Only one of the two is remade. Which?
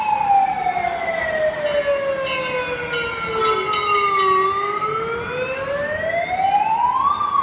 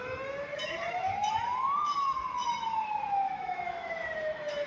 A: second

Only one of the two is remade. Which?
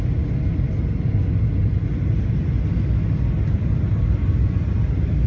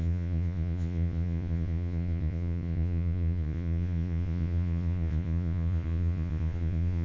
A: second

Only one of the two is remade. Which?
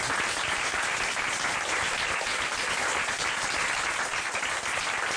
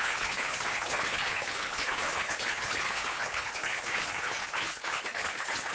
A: second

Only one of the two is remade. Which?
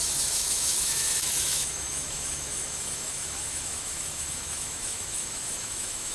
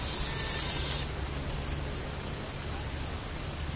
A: first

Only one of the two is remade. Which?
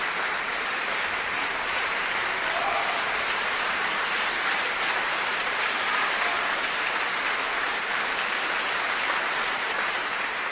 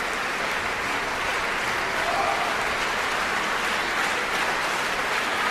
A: first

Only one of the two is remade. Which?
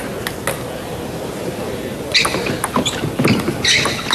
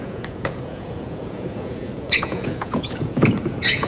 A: second